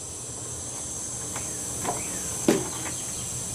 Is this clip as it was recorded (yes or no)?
yes